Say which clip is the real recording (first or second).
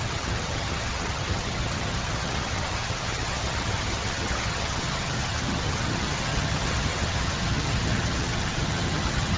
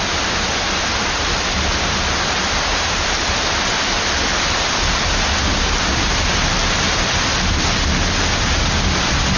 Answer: second